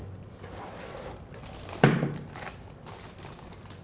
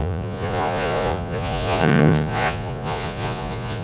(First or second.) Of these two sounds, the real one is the first